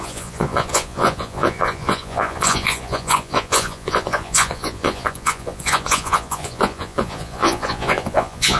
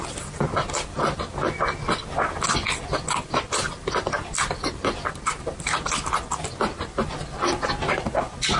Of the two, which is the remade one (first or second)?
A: first